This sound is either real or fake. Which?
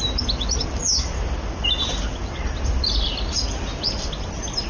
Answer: real